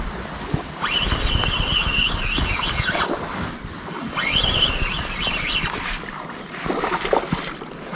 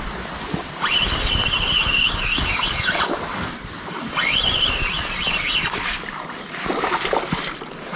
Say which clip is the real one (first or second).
first